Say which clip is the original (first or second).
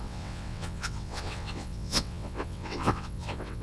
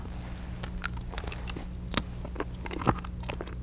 second